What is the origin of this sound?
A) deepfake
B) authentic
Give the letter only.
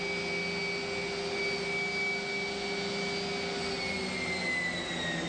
B